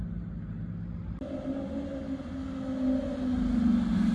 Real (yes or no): yes